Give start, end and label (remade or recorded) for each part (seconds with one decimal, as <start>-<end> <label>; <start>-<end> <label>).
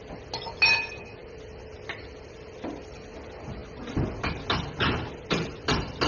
0.0-6.1 recorded